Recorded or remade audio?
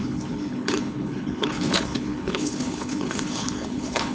remade